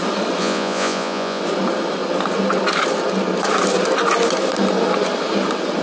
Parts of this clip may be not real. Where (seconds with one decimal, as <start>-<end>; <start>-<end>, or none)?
0.4-1.4